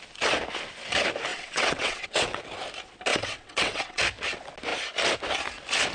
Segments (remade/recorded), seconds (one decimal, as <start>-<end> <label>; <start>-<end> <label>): 0.0-1.3 recorded; 1.3-2.4 remade; 2.4-3.1 recorded; 3.1-4.0 remade; 4.0-5.9 recorded